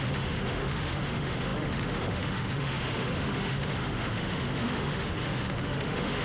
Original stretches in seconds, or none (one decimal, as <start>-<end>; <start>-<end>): none